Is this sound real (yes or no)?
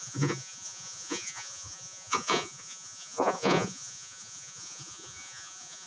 no